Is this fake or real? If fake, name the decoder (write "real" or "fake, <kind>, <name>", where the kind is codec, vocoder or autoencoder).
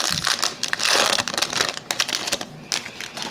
real